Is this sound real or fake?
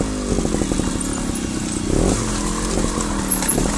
real